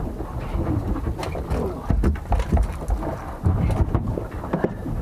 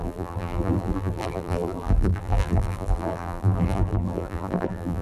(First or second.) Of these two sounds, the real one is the first